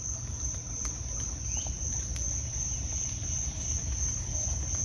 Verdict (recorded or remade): recorded